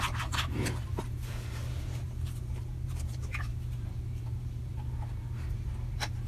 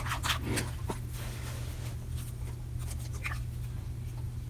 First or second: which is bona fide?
second